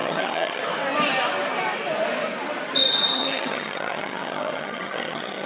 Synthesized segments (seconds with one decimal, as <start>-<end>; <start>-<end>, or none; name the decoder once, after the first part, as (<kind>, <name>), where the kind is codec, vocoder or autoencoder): 0.0-0.6 (vocoder, HiFi-GAN); 3.1-5.5